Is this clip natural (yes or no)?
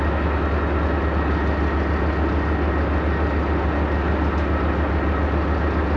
yes